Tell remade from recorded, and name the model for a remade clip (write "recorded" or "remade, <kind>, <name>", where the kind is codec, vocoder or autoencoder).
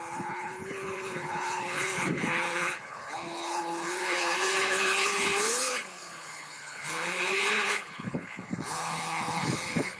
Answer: remade, codec, HILCodec